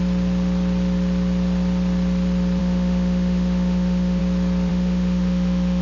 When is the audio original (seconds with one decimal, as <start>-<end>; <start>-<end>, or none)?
0.0-2.6; 4.2-4.7